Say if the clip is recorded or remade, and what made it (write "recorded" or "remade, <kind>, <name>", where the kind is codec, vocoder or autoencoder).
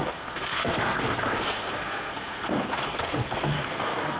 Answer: remade, codec, SNAC